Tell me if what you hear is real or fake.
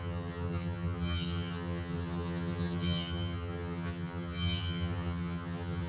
fake